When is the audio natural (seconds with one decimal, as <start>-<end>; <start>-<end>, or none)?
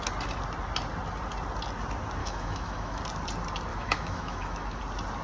0.0-2.2; 3.0-3.7; 4.8-5.2